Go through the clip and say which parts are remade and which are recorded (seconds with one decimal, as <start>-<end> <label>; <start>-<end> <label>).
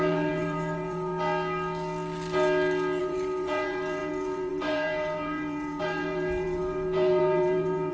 0.0-1.1 remade; 1.1-3.0 recorded; 3.0-7.9 remade